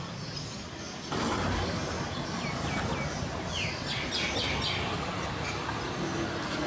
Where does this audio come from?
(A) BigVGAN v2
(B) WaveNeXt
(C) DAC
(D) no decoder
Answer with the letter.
D